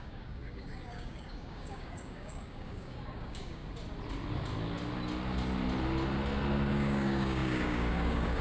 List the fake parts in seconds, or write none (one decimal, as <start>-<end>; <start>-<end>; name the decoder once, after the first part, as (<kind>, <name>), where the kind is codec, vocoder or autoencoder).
0.0-3.6 (codec, DAC); 6.7-8.4